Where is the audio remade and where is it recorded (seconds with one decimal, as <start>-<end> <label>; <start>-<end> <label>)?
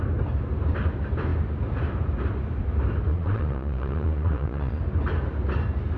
0.0-3.1 recorded; 3.1-4.8 remade; 4.8-6.0 recorded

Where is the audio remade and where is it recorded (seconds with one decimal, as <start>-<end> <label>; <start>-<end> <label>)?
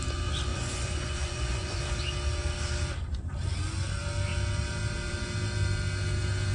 0.0-0.5 recorded; 0.5-1.8 remade; 1.8-6.5 recorded